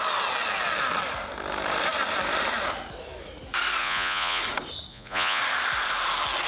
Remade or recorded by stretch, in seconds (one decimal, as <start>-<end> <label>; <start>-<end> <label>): 0.0-3.8 recorded; 3.8-4.4 remade; 4.4-4.9 recorded; 4.9-5.4 remade; 5.4-6.5 recorded